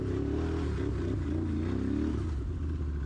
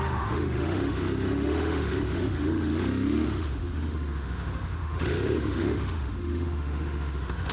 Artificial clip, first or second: second